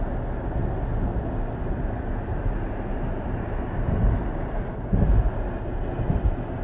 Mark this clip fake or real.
real